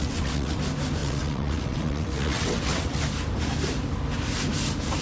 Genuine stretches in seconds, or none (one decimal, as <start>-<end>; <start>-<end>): 0.6-1.0; 3.0-5.0